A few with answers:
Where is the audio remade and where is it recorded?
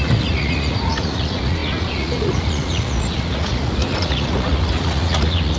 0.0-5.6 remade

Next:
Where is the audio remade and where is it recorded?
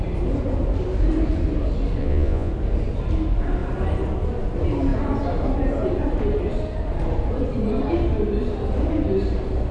0.0-2.0 recorded; 2.0-2.5 remade; 2.5-9.7 recorded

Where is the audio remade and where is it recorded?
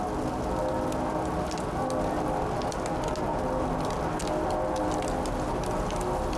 0.0-6.4 recorded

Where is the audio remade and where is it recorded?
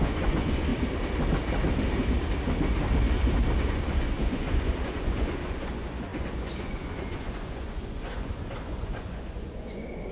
0.0-0.7 remade; 0.7-3.6 recorded; 3.6-10.1 remade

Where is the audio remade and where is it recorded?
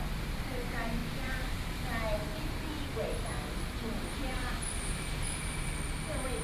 0.0-6.4 recorded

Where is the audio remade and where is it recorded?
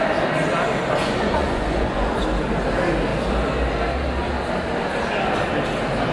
0.0-1.0 recorded; 1.0-2.2 remade; 2.2-6.1 recorded